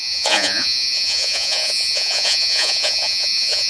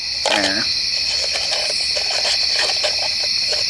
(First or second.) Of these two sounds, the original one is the second